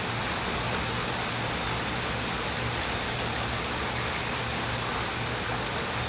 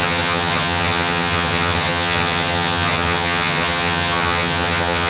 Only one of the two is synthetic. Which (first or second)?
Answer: second